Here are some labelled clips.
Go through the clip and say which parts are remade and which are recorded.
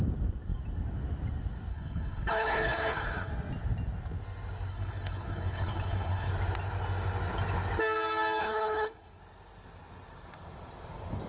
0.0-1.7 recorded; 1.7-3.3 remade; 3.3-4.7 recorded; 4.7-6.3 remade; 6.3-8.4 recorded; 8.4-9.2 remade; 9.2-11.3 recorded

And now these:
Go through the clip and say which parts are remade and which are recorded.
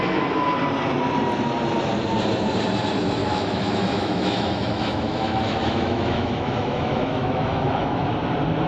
0.0-3.2 recorded; 3.2-8.1 remade; 8.1-8.7 recorded